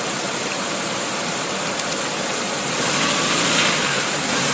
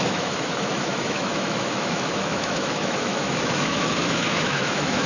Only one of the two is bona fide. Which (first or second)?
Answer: first